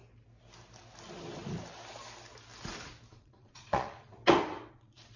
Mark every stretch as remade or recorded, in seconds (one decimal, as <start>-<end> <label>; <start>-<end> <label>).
0.0-3.1 recorded; 3.1-4.2 remade; 4.2-4.7 recorded; 4.7-5.2 remade